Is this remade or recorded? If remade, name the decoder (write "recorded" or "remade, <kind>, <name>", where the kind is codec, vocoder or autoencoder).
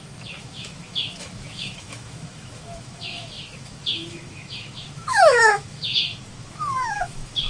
remade, autoencoder, DAC-VAE